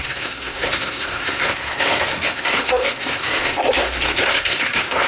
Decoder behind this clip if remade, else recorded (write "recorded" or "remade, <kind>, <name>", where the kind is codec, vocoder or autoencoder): remade, codec, SNAC